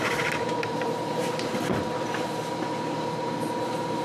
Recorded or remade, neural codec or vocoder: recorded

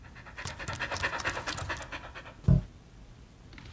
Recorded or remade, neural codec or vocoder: recorded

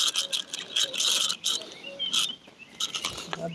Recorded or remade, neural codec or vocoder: recorded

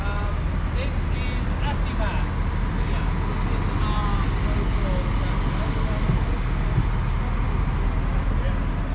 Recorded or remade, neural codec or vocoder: recorded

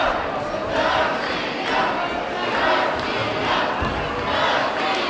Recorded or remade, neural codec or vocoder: recorded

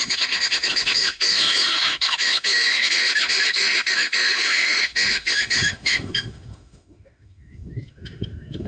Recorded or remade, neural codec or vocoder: remade, autoencoder, DAC-VAE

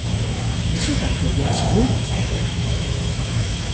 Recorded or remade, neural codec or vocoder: remade, autoencoder, DAC-VAE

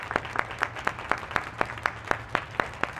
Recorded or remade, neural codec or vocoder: recorded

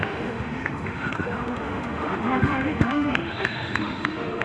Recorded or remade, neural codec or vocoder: remade, autoencoder, DAC-VAE